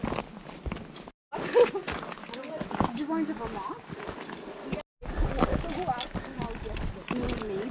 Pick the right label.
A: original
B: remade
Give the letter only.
A